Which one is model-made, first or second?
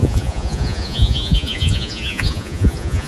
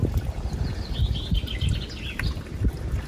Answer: first